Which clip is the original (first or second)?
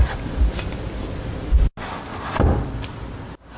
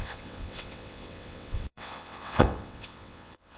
first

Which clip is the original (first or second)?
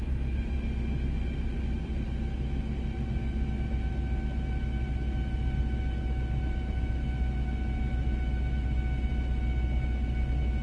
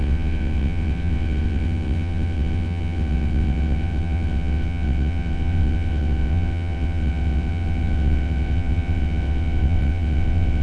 first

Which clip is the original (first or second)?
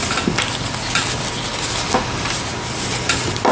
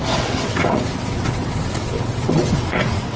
first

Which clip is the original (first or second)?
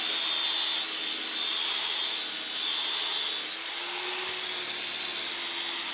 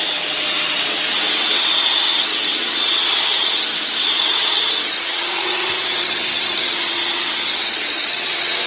first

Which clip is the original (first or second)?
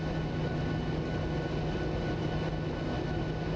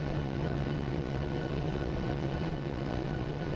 first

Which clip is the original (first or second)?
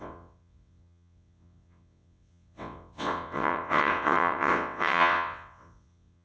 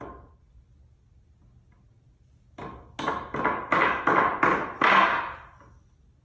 second